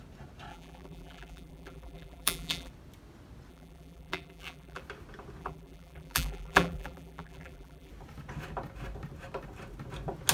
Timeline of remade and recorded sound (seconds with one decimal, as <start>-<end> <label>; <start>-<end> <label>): 0.0-0.5 recorded; 0.5-2.7 remade; 2.7-3.5 recorded; 3.5-4.8 remade; 4.8-5.4 recorded; 5.4-7.9 remade; 7.9-10.3 recorded